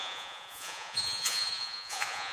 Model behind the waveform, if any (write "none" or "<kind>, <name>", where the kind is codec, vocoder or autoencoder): vocoder, Vocos